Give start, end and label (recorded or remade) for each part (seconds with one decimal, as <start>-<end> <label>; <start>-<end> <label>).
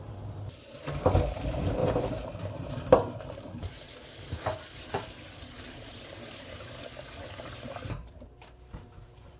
0.0-9.4 remade